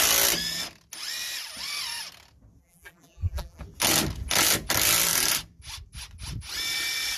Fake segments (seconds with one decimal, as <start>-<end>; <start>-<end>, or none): 2.6-3.6